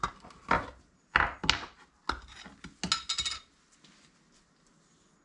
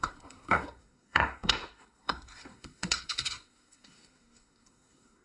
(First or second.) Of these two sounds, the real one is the first